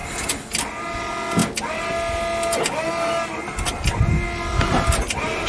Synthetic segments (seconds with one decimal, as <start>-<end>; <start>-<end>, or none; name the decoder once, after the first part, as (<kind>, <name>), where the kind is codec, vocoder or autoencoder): none